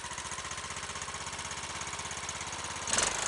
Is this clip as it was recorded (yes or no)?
yes